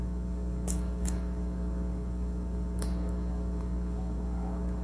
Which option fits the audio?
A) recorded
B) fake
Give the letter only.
B